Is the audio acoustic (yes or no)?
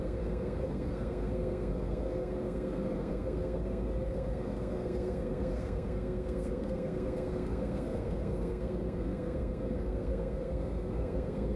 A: no